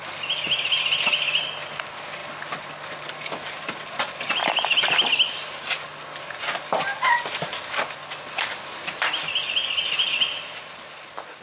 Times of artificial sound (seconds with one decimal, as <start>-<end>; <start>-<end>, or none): none